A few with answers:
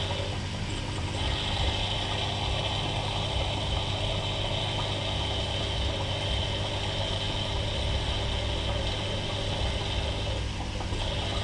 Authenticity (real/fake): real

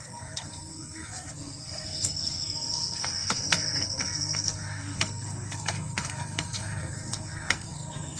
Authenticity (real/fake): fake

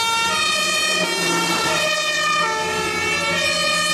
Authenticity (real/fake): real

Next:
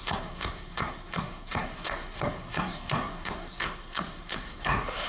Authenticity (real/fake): fake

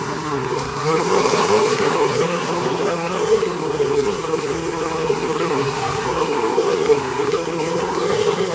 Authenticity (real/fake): fake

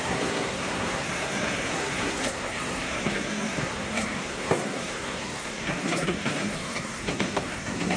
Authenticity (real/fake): fake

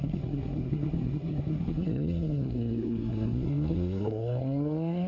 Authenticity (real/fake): fake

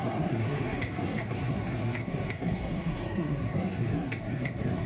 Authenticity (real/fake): fake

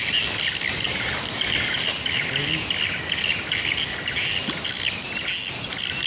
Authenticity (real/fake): real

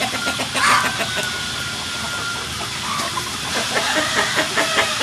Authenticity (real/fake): real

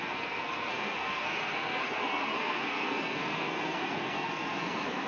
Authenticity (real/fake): fake